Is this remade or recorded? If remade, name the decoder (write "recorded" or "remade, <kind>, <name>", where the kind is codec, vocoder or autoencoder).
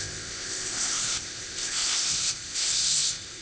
remade, codec, ZipCodec